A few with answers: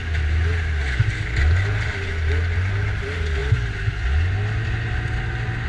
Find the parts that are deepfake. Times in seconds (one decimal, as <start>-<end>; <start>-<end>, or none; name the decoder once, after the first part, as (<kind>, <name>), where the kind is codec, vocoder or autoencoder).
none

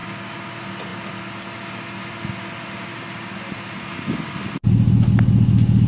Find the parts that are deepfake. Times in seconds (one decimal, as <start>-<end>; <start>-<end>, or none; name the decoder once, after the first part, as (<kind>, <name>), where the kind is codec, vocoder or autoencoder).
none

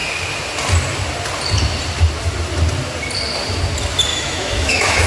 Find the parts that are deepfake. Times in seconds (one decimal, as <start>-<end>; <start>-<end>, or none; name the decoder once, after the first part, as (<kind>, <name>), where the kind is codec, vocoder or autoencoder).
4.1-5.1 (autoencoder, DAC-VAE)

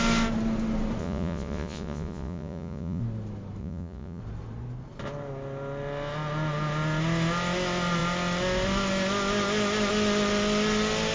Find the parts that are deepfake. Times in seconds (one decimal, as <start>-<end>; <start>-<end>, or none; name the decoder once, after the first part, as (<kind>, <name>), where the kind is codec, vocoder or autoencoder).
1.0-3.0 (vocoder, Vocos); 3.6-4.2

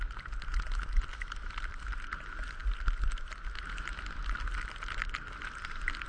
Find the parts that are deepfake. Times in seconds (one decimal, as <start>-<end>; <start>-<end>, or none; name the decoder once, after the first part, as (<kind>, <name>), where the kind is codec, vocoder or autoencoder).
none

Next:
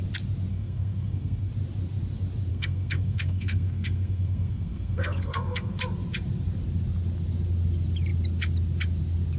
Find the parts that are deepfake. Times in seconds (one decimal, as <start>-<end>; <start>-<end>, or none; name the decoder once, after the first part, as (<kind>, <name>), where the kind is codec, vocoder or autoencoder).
0.5-1.5 (codec, SNAC); 2.5-5.8

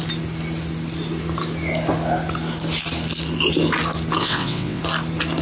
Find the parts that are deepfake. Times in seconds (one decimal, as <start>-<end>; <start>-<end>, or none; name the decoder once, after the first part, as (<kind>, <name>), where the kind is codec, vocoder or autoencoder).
4.2-4.8 (vocoder, WaveNeXt)

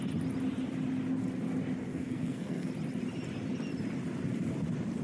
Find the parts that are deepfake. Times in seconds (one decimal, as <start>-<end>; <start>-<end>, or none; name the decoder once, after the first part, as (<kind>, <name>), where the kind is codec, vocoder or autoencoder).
1.9-2.7 (codec, SNAC)